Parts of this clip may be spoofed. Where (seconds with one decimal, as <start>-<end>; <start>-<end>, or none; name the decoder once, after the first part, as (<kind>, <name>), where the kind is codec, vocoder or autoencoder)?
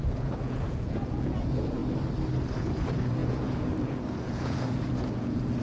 0.0-1.8 (vocoder, Vocos); 2.6-5.6